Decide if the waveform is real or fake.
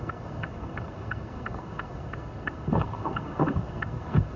fake